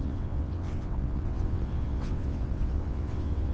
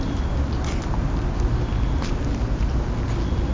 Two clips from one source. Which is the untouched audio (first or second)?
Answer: second